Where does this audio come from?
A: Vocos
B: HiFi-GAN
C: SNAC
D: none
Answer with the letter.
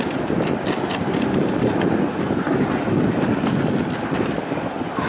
D